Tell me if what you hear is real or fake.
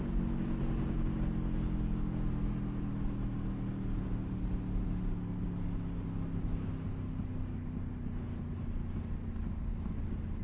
real